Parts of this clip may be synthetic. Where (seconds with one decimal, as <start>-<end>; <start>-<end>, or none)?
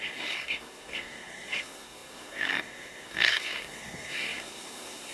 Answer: 0.0-5.1